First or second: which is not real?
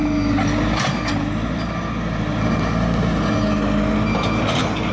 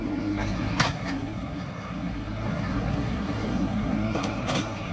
second